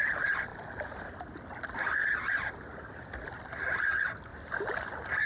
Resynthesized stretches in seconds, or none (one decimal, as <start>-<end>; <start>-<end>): none

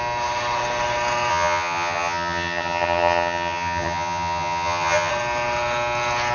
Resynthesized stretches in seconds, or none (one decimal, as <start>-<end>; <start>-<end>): 1.3-5.1

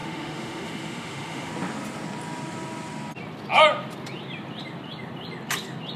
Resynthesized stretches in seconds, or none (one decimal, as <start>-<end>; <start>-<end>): 0.0-1.5

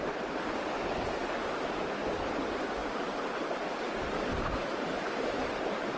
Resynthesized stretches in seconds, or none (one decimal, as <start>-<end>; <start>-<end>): 2.8-6.0

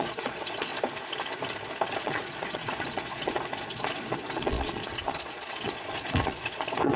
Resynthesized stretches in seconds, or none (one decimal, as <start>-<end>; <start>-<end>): 0.0-0.7; 2.0-7.0

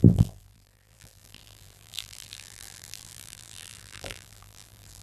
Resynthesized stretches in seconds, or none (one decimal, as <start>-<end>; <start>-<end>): 0.0-5.0

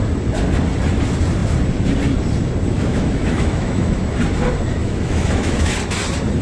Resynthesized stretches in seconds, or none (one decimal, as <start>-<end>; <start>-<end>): 2.7-4.0; 4.8-5.7

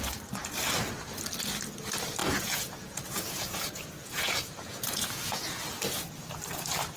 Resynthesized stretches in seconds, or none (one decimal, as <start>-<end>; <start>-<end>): 2.2-5.7